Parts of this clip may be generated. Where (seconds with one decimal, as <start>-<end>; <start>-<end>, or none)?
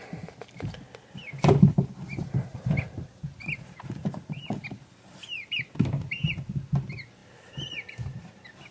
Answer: none